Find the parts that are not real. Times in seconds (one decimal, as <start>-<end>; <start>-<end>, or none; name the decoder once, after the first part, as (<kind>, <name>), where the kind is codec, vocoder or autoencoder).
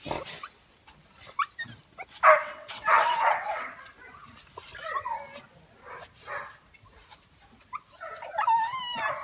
2.4-3.7 (vocoder, WaveNeXt)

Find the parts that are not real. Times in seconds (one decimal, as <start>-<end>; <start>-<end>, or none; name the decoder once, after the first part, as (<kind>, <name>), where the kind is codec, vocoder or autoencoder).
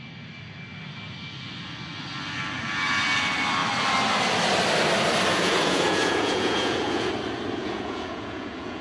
5.3-7.1 (vocoder, Vocos); 7.6-8.8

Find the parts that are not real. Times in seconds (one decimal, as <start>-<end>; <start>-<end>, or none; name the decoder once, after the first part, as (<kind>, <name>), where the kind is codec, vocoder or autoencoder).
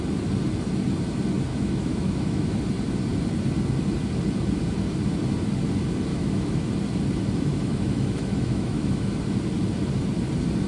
1.5-2.6 (autoencoder, DAC-VAE); 6.1-6.7; 7.5-9.1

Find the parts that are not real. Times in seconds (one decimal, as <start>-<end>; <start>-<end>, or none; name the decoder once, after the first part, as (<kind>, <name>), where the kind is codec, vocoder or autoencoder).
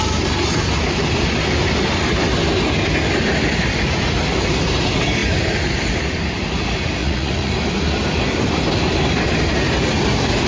7.0-7.5 (vocoder, Vocos)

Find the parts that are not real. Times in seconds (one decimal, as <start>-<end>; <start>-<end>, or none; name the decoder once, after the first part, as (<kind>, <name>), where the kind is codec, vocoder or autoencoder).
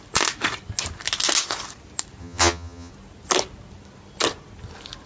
2.2-2.9 (vocoder, HiFi-GAN)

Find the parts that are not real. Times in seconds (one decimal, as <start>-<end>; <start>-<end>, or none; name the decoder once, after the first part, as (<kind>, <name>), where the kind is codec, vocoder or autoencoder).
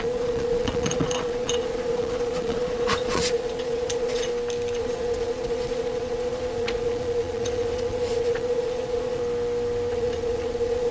0.0-4.3 (vocoder, Vocos); 4.8-9.2; 9.9-10.9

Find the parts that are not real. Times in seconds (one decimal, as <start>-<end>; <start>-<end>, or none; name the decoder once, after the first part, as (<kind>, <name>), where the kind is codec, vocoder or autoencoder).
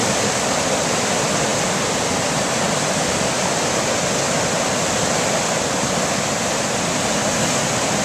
none